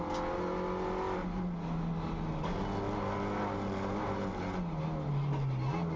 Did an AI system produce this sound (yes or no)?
no